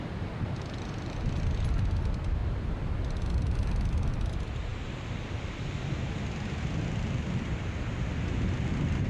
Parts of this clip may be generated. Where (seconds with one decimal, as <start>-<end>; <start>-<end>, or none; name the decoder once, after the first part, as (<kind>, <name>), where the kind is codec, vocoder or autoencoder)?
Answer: none